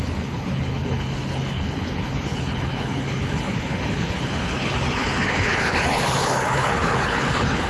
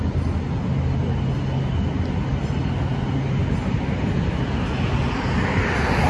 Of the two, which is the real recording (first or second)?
second